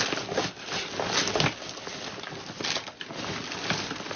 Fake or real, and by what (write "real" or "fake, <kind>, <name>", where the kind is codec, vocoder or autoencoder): real